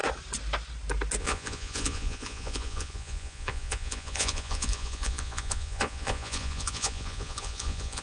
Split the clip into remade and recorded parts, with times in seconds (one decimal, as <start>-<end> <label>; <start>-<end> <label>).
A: 0.0-1.2 recorded; 1.2-8.0 remade